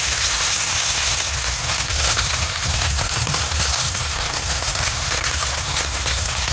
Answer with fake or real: fake